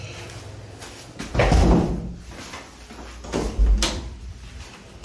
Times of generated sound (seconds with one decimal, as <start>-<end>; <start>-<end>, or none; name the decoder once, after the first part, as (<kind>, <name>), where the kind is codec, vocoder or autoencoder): none